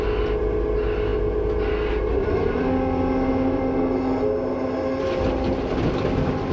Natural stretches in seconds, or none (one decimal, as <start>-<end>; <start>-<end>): 0.0-6.5